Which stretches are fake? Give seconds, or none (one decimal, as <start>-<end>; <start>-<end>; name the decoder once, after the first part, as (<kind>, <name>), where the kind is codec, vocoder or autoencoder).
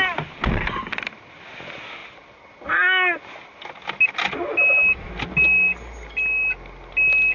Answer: 4.5-5.1 (autoencoder, DAC-VAE)